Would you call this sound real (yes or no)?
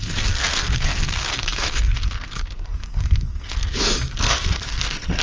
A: no